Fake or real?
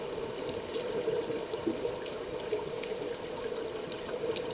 fake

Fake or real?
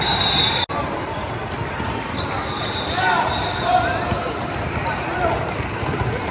real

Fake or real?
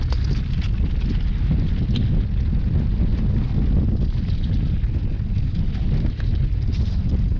real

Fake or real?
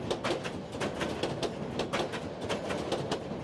real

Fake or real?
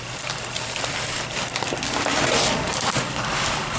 real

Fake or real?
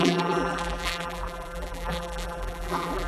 fake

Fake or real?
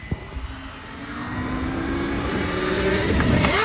real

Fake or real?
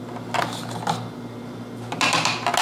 real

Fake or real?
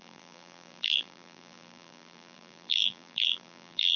fake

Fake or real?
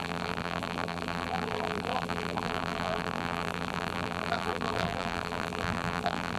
fake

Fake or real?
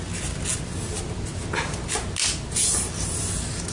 real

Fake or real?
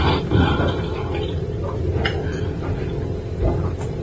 fake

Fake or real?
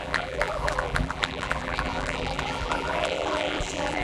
fake